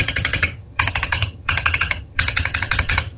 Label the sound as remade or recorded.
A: remade